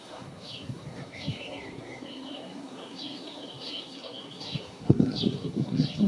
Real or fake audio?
fake